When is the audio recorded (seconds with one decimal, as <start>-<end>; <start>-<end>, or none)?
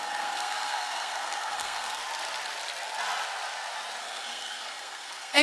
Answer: 2.0-4.0